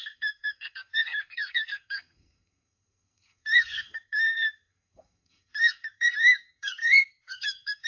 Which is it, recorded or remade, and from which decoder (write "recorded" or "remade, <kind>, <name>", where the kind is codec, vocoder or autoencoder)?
remade, codec, SNAC